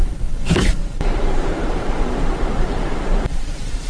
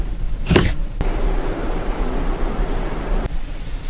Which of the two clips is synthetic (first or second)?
first